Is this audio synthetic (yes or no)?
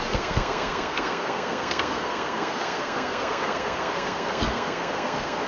yes